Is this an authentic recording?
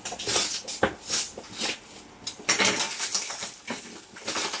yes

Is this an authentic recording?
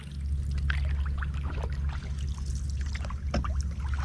yes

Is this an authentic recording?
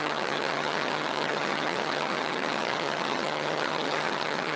no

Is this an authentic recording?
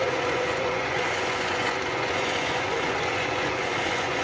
no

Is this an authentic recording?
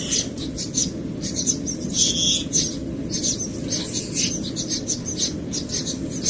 yes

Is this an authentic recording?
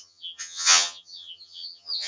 no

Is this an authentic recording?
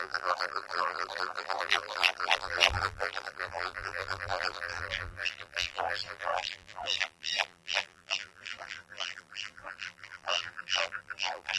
no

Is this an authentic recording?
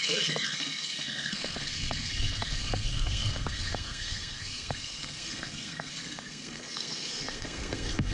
no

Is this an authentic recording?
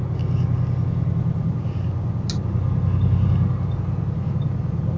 yes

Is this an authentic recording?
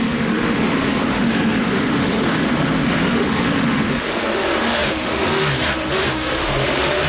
no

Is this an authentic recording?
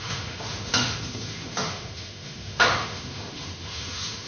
no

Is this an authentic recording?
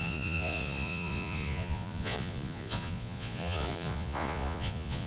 no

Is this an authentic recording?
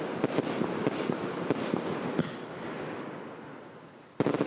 yes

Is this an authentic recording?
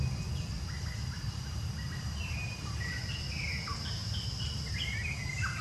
yes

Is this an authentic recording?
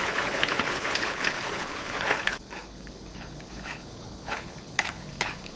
no